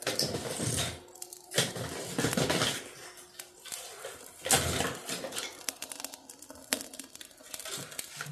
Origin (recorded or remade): recorded